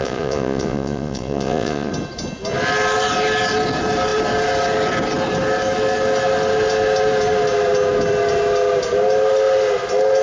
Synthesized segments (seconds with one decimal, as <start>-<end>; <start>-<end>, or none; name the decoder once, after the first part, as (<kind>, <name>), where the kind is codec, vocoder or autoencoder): 0.0-1.9 (vocoder, Vocos)